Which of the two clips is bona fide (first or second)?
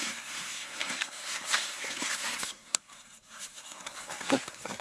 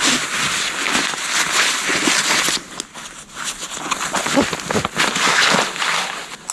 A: second